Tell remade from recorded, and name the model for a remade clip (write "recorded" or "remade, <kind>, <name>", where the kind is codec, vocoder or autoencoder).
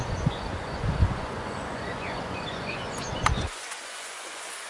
remade, vocoder, Vocos